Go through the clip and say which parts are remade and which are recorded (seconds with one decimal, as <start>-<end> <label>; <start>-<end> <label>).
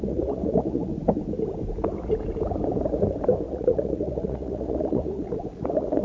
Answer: 0.0-0.9 remade; 0.9-3.5 recorded; 3.5-6.0 remade